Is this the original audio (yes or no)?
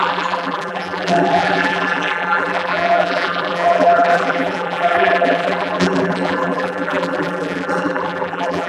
no